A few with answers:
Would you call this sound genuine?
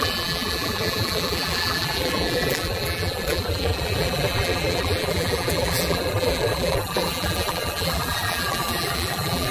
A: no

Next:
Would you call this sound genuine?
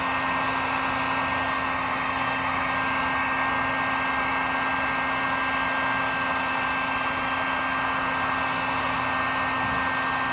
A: yes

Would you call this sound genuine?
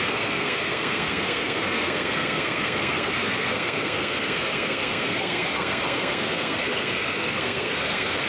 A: no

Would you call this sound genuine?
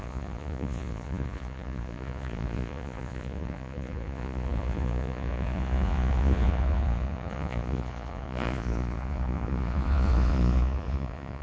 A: no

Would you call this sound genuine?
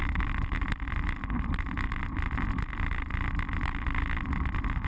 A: yes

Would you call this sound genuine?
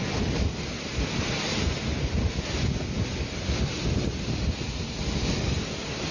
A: yes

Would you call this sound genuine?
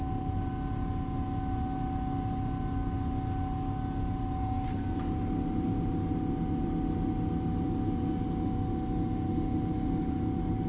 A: yes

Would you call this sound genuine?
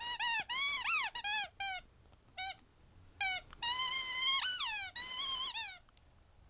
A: yes